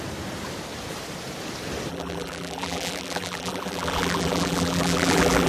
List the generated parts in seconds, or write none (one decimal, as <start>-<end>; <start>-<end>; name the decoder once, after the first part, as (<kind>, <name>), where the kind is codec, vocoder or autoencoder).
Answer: 1.9-5.5 (vocoder, BigVGAN v2)